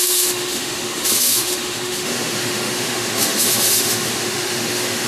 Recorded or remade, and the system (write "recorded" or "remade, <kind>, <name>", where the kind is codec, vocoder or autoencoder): remade, autoencoder, DAC-VAE